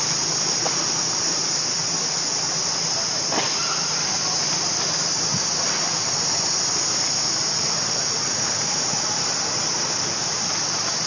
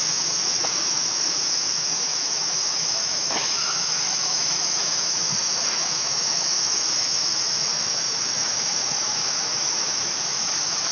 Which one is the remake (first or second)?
second